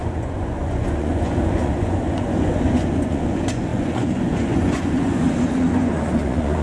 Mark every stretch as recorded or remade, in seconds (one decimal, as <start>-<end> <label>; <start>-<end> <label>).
0.0-6.6 remade